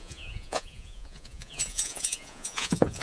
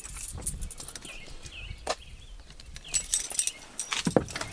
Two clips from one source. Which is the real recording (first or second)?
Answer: second